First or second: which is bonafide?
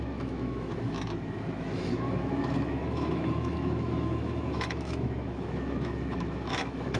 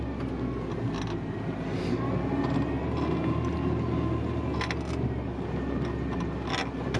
second